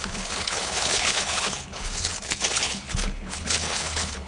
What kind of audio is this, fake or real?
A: fake